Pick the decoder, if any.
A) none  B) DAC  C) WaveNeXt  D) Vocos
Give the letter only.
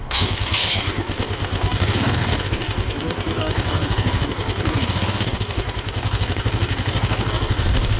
B